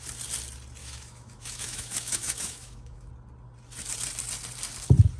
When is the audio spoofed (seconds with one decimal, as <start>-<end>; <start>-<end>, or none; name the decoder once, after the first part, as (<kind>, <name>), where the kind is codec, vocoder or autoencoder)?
0.8-3.1 (autoencoder, DAC-VAE)